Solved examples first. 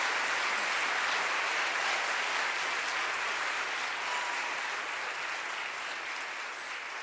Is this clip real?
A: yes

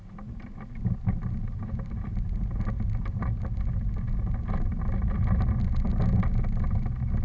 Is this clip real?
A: yes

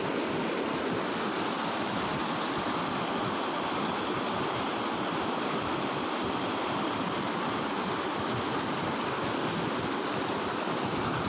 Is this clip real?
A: yes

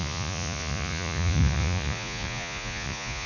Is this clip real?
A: no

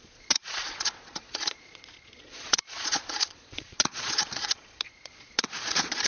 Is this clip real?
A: no